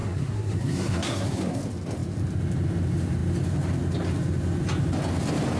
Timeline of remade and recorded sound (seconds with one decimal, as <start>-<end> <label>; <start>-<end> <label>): 0.0-1.6 remade; 1.6-5.6 recorded